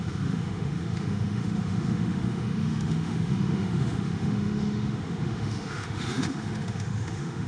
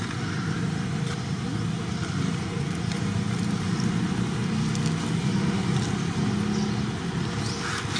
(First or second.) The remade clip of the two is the first